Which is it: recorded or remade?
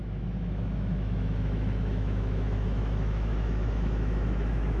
remade